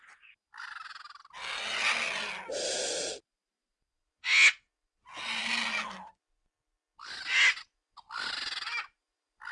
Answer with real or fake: real